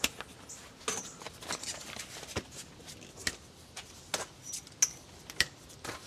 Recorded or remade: recorded